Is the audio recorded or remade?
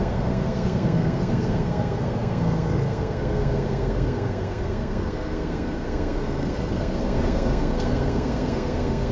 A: remade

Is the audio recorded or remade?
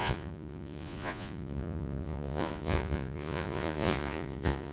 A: remade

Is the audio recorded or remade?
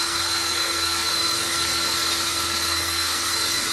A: remade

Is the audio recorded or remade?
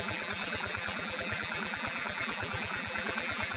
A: remade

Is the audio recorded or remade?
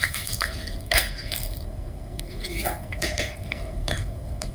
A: remade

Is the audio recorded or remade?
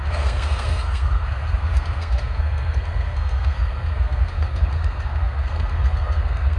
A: remade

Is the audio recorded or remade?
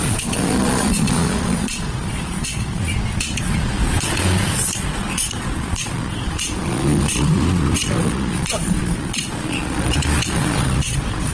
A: remade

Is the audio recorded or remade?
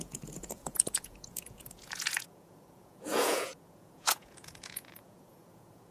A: remade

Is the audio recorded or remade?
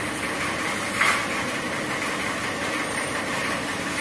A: recorded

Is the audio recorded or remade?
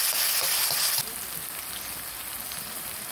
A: recorded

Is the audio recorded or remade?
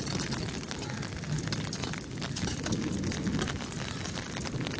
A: recorded